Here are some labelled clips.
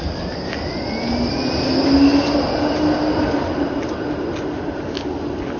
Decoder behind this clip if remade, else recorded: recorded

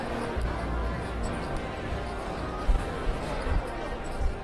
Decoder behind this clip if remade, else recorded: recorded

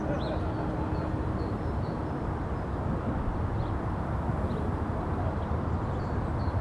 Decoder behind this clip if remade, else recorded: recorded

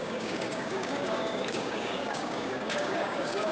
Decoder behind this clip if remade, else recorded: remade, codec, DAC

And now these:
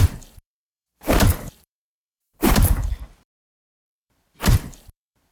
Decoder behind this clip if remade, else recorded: remade, vocoder, BigVGAN v2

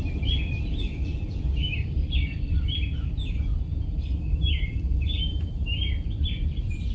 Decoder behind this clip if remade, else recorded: remade, vocoder, BigVGAN v2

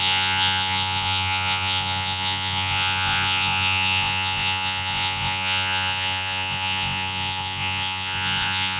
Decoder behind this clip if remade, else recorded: remade, vocoder, Vocos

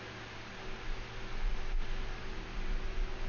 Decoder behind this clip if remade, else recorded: recorded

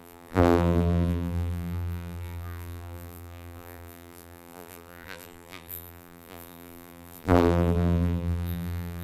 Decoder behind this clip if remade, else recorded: remade, vocoder, BigVGAN v2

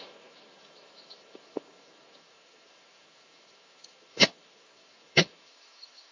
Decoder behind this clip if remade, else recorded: remade, autoencoder, DAC-VAE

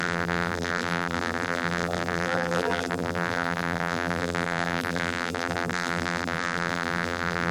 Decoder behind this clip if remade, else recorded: remade, vocoder, BigVGAN v2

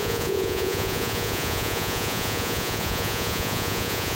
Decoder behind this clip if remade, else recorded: remade, vocoder, Vocos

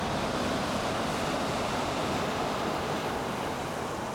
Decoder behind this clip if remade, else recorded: recorded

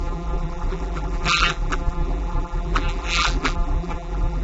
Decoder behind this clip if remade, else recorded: remade, vocoder, BigVGAN v2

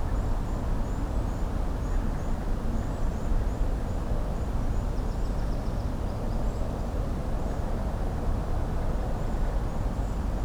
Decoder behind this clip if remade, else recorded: recorded